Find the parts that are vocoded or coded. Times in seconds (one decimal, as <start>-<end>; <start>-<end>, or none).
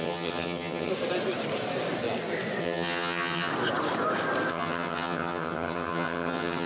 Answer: 0.0-0.9; 2.6-3.5; 4.5-6.7